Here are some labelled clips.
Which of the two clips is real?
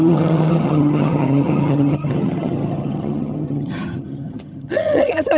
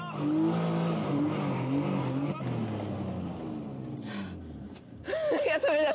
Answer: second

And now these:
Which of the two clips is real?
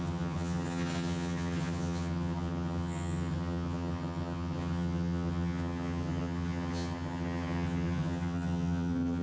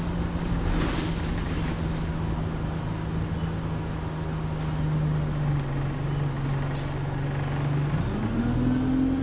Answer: second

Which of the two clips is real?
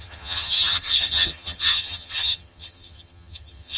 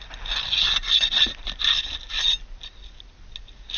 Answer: second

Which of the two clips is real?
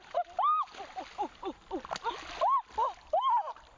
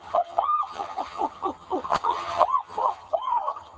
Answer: first